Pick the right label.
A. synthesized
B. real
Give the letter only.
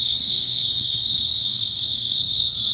A